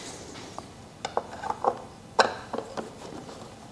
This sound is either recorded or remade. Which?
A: recorded